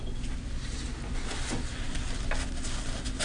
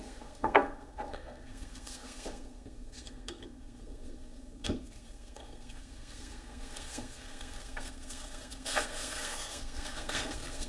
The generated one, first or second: second